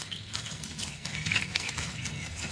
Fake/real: fake